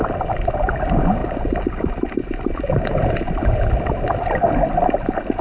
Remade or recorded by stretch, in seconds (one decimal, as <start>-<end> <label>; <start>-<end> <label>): 0.0-5.4 recorded